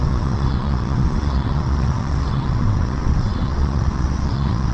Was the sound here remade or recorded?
remade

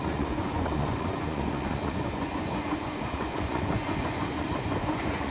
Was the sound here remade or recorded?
remade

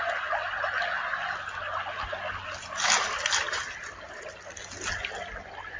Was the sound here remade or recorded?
recorded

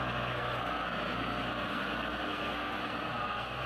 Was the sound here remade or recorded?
remade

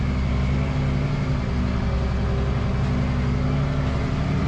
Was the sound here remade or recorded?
recorded